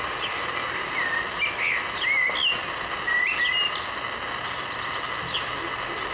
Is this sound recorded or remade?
recorded